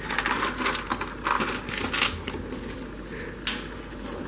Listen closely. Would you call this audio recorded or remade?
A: recorded